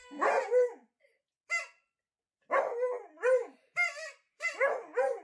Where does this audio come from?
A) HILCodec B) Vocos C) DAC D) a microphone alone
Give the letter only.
D